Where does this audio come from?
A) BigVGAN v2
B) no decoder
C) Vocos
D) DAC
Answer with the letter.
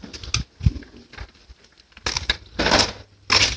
B